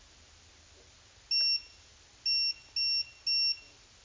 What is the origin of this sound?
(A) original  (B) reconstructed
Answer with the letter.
A